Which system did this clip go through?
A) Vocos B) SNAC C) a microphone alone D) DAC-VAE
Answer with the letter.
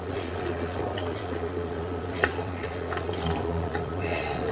A